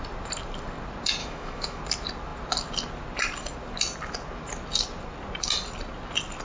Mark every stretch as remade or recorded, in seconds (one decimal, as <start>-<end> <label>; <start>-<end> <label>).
0.0-1.2 recorded; 1.2-1.8 remade; 1.8-6.4 recorded